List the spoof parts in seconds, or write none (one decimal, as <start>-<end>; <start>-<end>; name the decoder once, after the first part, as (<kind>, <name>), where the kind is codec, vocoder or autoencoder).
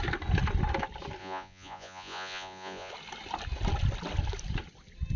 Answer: 1.2-2.9 (vocoder, Vocos)